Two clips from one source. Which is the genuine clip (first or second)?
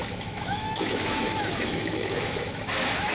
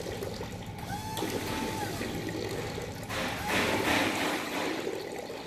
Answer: second